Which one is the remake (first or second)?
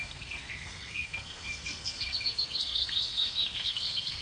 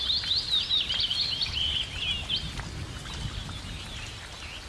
first